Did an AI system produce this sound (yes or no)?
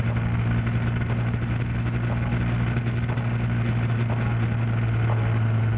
no